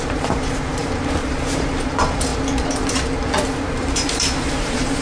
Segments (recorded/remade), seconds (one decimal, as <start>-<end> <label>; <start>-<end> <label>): 0.0-2.3 remade; 2.3-3.8 recorded; 3.8-5.0 remade